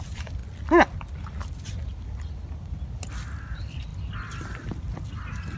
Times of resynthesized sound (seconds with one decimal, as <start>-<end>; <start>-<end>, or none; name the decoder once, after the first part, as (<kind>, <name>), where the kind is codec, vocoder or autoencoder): 0.0-0.4 (vocoder, BigVGAN v2); 3.1-3.9; 4.4-5.6